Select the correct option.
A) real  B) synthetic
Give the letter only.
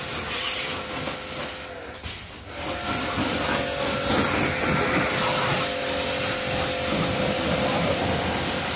A